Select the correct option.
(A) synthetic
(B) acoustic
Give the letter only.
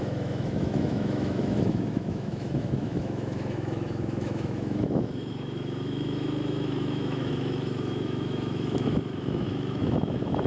A